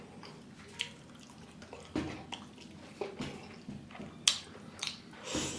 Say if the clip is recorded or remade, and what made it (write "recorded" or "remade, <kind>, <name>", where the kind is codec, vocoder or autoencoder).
recorded